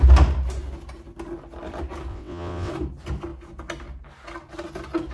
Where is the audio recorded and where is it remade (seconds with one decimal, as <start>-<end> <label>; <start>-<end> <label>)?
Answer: 0.0-2.1 recorded; 2.1-2.7 remade; 2.7-5.1 recorded